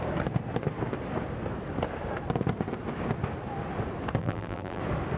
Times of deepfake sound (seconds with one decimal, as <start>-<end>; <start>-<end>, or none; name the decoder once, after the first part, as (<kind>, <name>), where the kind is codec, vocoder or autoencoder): 4.2-4.8 (vocoder, BigVGAN v2)